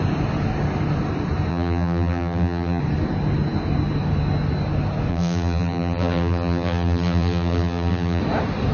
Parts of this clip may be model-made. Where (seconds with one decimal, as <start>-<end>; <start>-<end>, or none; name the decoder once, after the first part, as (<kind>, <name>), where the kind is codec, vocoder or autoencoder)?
1.5-2.8 (vocoder, BigVGAN v2); 5.1-8.2